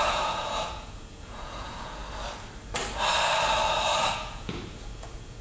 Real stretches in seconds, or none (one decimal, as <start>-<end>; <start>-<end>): 2.0-4.1